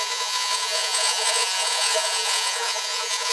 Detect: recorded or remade remade